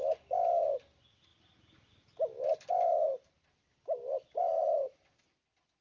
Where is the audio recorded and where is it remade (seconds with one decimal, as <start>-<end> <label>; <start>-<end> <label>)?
0.0-5.8 recorded